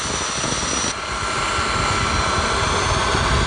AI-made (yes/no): no